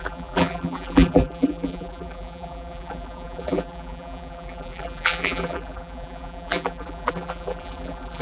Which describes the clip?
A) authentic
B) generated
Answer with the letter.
B